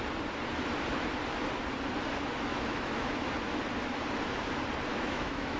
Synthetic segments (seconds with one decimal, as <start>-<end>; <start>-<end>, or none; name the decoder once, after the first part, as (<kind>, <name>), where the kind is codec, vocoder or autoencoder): 2.5-3.3 (autoencoder, DAC-VAE); 4.9-5.6